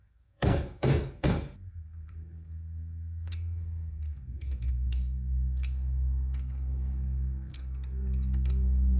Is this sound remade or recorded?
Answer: remade